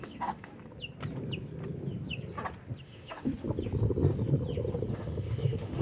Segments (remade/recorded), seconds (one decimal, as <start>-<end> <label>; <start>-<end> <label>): 0.0-0.5 remade; 0.5-2.8 recorded; 2.8-3.3 remade; 3.3-4.9 recorded; 4.9-5.8 remade